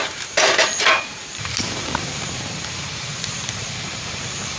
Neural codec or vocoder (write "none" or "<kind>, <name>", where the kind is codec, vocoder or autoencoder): vocoder, BigVGAN v2